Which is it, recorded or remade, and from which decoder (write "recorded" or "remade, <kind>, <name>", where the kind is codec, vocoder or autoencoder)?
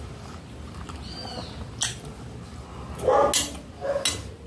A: recorded